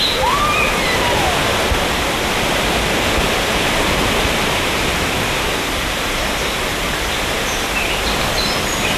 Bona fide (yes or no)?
yes